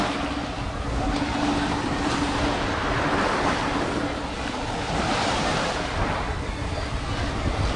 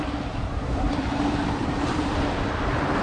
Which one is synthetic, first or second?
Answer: second